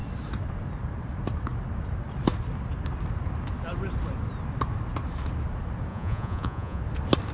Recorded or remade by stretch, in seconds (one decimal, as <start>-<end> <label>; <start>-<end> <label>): 0.0-5.9 recorded; 5.9-6.8 remade; 6.8-7.3 recorded